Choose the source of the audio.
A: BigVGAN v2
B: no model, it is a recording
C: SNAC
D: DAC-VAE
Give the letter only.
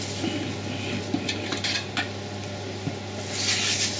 B